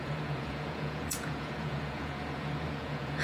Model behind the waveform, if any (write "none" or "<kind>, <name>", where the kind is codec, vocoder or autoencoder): vocoder, Vocos